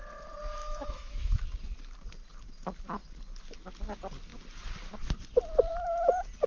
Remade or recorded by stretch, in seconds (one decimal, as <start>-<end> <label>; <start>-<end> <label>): 0.0-0.6 recorded; 0.6-1.4 remade; 1.4-6.5 recorded